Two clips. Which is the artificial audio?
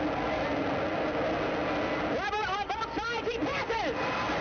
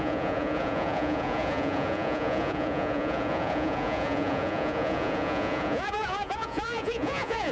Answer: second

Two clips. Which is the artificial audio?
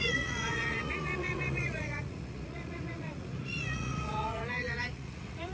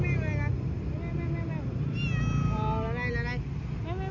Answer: first